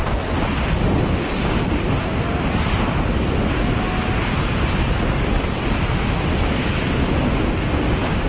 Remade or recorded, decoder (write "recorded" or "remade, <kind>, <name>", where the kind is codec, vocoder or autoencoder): recorded